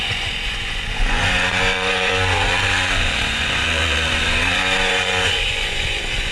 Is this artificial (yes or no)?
yes